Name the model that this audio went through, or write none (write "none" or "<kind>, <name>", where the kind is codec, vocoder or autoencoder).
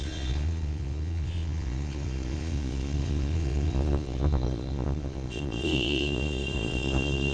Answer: vocoder, Vocos